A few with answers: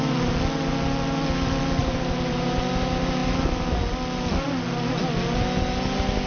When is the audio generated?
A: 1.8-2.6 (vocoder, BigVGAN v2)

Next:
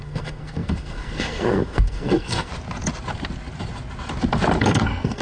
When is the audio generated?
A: 0.0-2.5 (codec, SNAC); 4.6-5.2

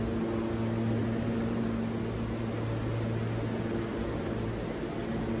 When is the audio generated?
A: 1.0-1.6 (vocoder, BigVGAN v2)